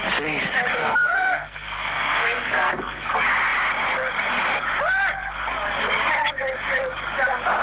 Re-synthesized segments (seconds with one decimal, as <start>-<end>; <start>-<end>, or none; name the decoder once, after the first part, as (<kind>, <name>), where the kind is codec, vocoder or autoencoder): 0.8-3.1 (codec, SNAC)